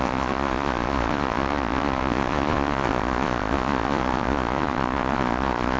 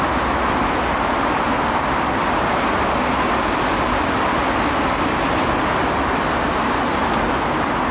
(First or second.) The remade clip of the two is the first